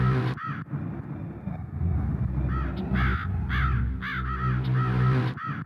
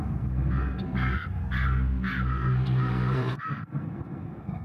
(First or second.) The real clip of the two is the first